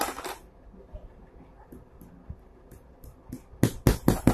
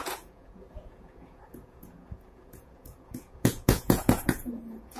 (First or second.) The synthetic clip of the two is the second